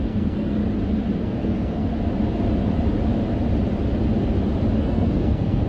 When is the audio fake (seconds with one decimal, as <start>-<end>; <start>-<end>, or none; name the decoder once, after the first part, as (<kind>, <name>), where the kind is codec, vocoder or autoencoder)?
0.0-0.6 (codec, SNAC); 1.2-1.9; 4.8-5.7